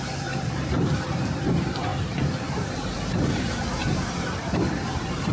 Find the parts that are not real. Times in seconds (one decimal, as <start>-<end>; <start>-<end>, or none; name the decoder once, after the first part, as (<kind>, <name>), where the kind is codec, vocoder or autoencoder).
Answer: 0.0-5.3 (vocoder, BigVGAN v2)